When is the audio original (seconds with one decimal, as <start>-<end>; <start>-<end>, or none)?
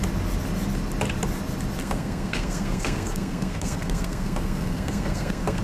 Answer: 0.0-1.8